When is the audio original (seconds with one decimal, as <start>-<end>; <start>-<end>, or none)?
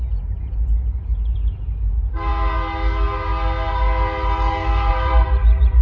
2.3-4.9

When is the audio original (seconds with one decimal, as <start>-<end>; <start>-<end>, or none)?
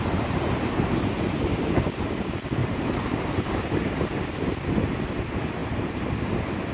0.0-2.6; 3.9-6.7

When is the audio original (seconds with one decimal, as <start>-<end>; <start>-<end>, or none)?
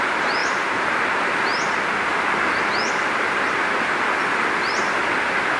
0.0-0.4; 1.0-5.6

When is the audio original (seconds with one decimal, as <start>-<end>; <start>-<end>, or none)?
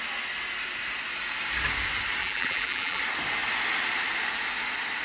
0.0-2.2; 3.0-5.0